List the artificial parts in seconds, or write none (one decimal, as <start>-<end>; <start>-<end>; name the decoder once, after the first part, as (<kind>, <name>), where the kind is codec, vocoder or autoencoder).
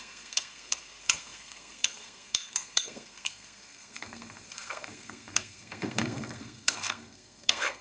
0.0-7.8 (codec, SNAC)